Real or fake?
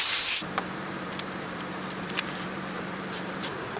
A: fake